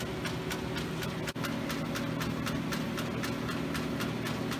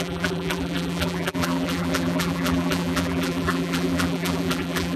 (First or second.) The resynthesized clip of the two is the second